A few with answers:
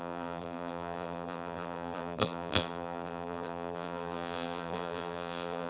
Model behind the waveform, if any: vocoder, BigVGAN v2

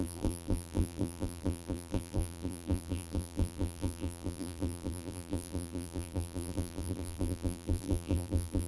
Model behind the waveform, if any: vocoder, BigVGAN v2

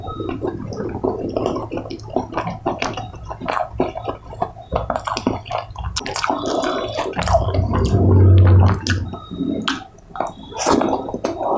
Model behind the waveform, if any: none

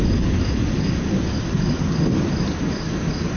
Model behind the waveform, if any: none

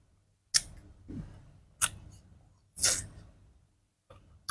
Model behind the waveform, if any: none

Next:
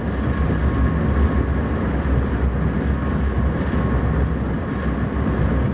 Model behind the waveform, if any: none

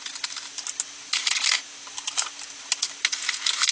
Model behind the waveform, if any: none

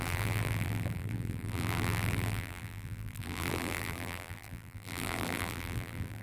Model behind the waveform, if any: vocoder, BigVGAN v2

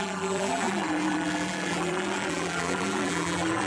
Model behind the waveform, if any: vocoder, BigVGAN v2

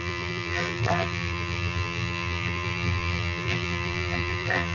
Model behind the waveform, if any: vocoder, BigVGAN v2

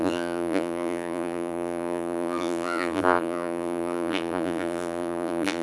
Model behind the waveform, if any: vocoder, BigVGAN v2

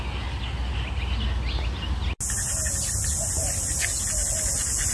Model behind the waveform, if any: none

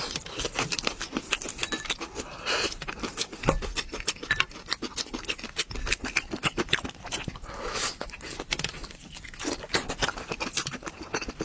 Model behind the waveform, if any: vocoder, BigVGAN v2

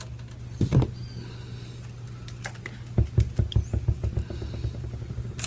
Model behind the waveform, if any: none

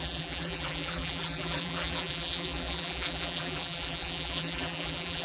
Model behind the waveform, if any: vocoder, BigVGAN v2